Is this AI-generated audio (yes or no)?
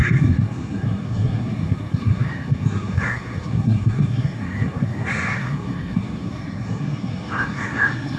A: yes